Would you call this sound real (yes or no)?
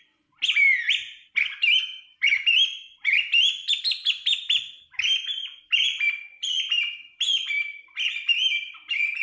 no